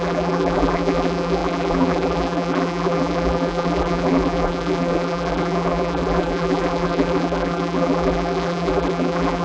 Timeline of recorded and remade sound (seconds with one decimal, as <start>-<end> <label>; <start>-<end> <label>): 0.0-9.4 remade

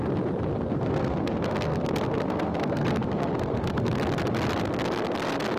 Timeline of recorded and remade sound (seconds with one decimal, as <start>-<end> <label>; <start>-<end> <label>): 0.0-0.5 recorded; 0.5-3.9 remade; 3.9-5.6 recorded

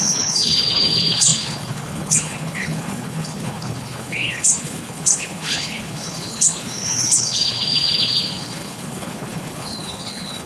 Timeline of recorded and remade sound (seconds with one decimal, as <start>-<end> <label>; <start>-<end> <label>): 0.0-10.5 remade

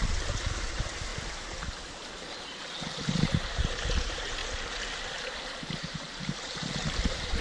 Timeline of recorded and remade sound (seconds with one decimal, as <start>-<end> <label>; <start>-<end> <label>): 0.0-1.1 remade; 1.1-3.1 recorded; 3.1-4.4 remade; 4.4-5.9 recorded; 5.9-7.4 remade

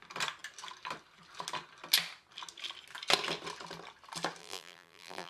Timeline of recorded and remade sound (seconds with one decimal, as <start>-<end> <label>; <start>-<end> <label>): 0.0-4.4 recorded; 4.4-5.3 remade

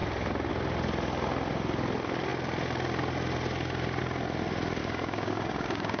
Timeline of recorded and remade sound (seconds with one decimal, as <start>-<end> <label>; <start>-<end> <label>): 0.0-4.8 recorded; 4.8-6.0 remade